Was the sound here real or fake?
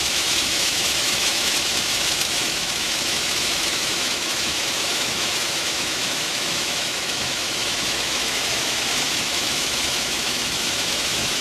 fake